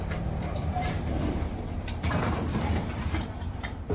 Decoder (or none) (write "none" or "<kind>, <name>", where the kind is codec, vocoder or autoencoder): vocoder, BigVGAN v2